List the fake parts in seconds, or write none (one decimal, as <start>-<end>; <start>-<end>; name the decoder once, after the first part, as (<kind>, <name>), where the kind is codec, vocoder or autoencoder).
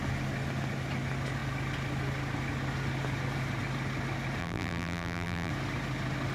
4.4-5.5 (vocoder, BigVGAN v2)